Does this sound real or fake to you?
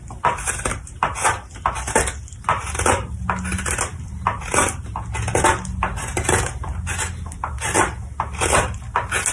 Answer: real